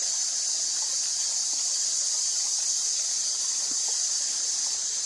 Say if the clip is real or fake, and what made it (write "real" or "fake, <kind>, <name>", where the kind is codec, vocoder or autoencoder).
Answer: fake, vocoder, BigVGAN v2